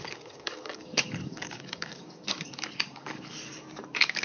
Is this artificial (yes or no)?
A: yes